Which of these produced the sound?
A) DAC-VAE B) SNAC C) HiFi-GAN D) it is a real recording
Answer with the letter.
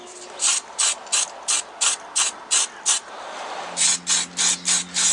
D